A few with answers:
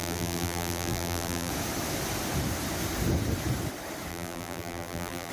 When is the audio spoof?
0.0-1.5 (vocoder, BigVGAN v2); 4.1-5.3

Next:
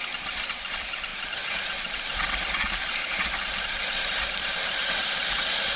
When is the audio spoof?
none

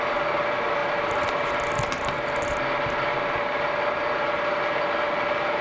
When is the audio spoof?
none

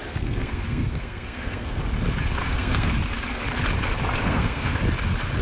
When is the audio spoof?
0.0-1.8 (codec, SNAC); 2.4-2.9; 4.2-4.8

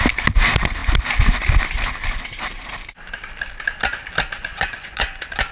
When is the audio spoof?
4.5-5.5 (vocoder, Vocos)